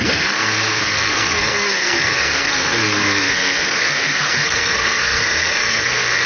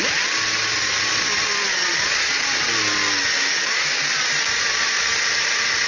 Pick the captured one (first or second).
second